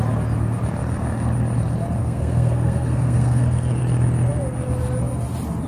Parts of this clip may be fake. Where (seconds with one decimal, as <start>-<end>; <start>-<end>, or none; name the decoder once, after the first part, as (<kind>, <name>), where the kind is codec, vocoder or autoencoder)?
2.0-3.8 (codec, SNAC)